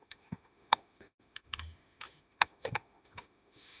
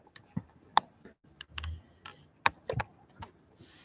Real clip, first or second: second